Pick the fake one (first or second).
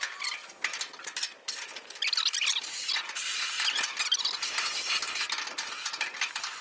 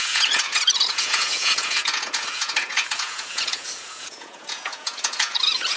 second